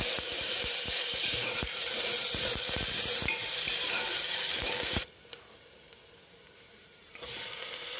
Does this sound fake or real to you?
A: fake